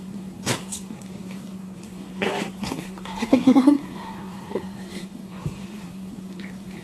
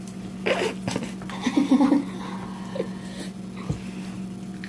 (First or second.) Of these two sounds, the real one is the second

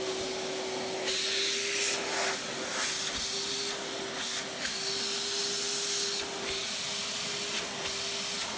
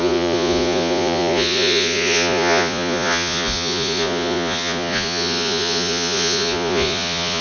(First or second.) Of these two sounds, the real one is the first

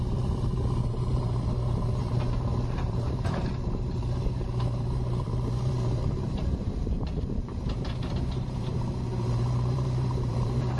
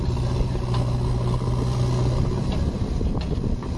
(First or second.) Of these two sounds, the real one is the second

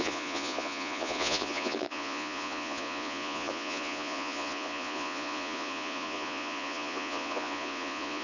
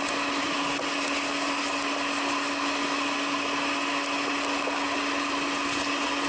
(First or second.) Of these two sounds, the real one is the second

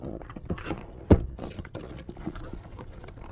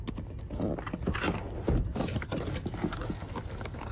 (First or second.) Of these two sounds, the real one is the second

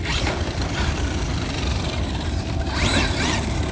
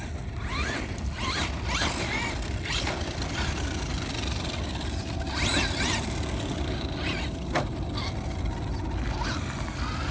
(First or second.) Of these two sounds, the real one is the second